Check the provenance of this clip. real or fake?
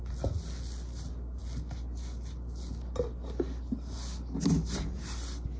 real